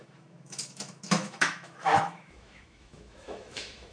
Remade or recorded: remade